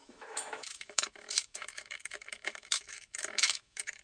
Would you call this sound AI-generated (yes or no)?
yes